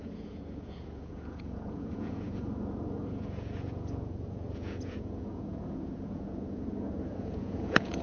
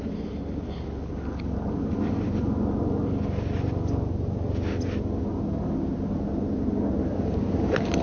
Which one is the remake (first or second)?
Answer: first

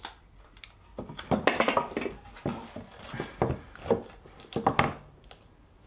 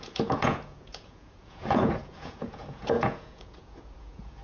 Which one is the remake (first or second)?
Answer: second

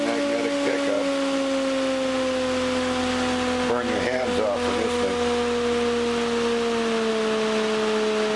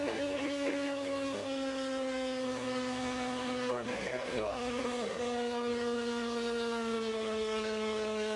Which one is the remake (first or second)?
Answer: second